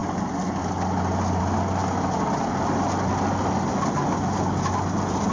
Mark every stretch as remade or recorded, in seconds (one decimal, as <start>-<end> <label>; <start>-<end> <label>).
0.0-5.3 recorded